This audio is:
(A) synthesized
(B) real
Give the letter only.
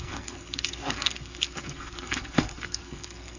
A